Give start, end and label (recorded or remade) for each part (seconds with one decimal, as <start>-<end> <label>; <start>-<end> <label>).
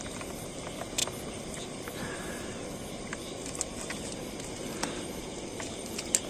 0.0-6.3 recorded